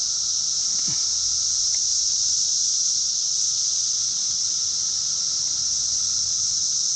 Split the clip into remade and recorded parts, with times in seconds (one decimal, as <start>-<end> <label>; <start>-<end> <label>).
0.0-1.9 recorded; 1.9-2.5 remade; 2.5-2.9 recorded; 2.9-4.7 remade; 4.7-5.6 recorded; 5.6-7.0 remade